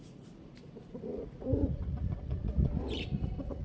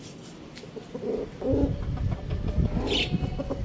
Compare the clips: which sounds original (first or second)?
second